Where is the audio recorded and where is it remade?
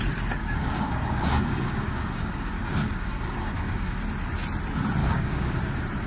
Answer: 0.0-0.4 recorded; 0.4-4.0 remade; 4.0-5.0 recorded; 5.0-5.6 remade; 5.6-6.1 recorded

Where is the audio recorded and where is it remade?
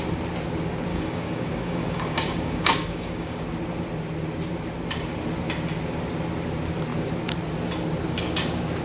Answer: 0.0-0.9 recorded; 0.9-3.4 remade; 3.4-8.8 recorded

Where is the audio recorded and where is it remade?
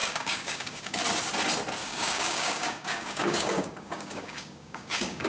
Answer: 0.0-1.0 remade; 1.0-1.8 recorded; 1.8-5.3 remade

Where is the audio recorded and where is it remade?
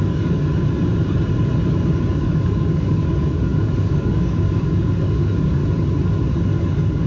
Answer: 0.0-0.5 remade; 0.5-2.1 recorded; 2.1-5.6 remade; 5.6-6.6 recorded; 6.6-7.1 remade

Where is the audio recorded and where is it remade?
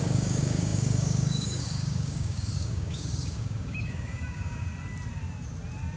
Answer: 0.0-4.7 remade; 4.7-6.0 recorded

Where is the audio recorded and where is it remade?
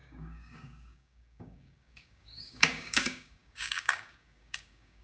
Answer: 0.0-5.0 remade